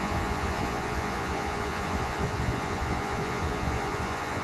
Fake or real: fake